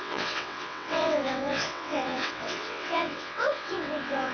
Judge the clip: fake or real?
fake